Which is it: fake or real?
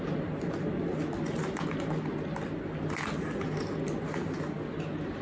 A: real